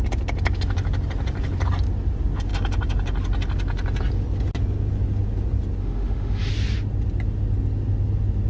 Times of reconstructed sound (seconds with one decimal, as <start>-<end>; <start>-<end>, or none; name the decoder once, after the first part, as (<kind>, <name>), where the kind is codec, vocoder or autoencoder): 5.8-6.5 (autoencoder, DAC-VAE)

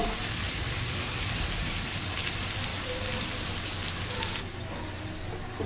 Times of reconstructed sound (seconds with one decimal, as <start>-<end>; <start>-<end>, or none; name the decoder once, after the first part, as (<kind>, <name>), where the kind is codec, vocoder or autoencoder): 0.0-2.7 (vocoder, BigVGAN v2)

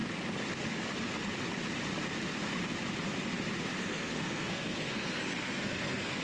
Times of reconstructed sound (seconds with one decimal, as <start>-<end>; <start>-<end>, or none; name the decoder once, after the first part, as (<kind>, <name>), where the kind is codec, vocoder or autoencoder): 3.8-6.2 (codec, SNAC)